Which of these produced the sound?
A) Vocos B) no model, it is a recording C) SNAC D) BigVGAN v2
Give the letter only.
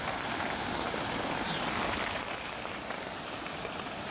D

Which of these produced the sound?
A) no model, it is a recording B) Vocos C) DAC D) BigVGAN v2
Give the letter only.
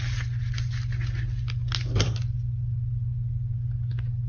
A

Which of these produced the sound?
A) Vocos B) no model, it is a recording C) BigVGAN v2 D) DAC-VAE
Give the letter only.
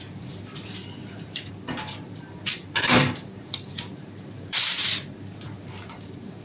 C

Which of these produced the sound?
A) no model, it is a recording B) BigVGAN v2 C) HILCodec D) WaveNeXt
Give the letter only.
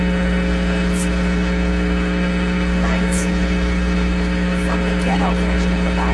C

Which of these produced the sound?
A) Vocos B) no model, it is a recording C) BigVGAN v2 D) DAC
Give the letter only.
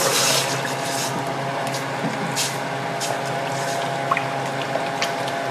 B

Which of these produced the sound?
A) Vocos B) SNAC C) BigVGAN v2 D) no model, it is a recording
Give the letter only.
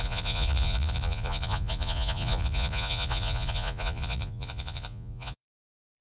A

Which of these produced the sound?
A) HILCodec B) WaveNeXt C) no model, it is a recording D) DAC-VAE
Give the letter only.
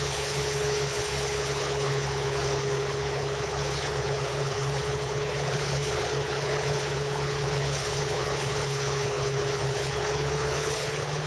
A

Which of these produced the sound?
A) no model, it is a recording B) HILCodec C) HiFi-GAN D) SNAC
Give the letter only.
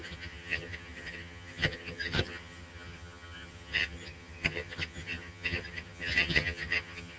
C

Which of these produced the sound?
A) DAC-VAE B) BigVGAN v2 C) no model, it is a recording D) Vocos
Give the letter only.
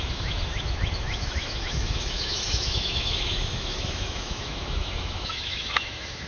A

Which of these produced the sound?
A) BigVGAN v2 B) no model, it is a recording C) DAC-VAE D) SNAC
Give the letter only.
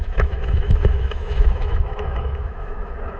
C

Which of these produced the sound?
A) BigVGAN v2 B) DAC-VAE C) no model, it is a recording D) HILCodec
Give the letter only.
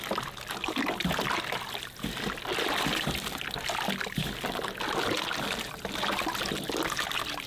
C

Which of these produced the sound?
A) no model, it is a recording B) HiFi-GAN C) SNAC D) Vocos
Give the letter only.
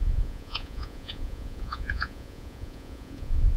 D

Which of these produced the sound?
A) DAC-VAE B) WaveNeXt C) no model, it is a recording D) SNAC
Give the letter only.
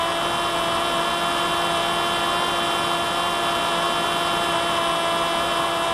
C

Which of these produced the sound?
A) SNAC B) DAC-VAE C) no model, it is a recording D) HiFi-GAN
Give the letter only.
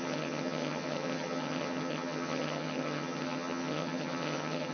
D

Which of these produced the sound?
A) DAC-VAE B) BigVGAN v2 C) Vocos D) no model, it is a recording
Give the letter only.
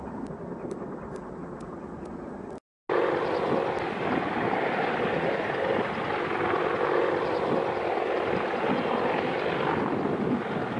D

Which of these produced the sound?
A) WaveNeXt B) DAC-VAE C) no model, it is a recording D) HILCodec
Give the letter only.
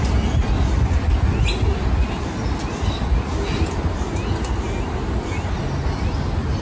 C